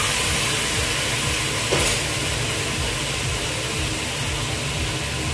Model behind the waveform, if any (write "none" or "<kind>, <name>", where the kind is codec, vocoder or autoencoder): none